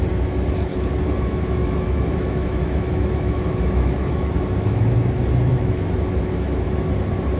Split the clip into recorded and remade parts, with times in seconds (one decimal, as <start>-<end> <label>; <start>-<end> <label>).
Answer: 0.0-0.7 recorded; 0.7-4.8 remade; 4.8-5.5 recorded; 5.5-6.7 remade; 6.7-7.4 recorded